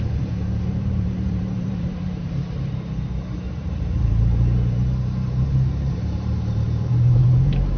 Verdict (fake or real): fake